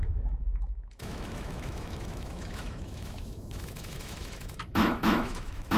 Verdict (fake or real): fake